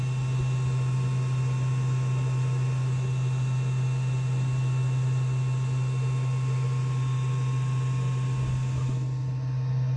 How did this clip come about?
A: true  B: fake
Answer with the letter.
A